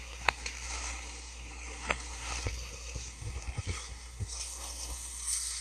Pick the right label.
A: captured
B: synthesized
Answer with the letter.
B